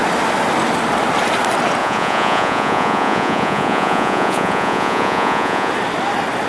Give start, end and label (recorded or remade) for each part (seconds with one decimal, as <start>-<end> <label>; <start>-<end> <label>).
0.0-1.8 recorded; 1.8-5.7 remade; 5.7-6.5 recorded